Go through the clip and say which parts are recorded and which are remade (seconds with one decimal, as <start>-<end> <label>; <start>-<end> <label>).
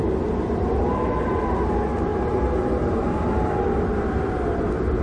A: 0.0-5.0 recorded